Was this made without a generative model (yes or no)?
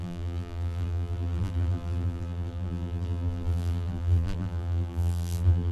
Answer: no